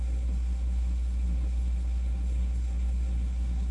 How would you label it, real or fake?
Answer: fake